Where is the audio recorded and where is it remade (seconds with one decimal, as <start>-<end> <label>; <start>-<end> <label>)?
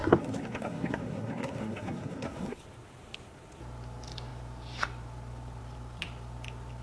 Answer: 0.0-2.6 remade; 2.6-6.8 recorded